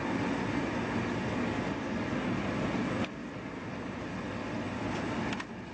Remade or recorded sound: recorded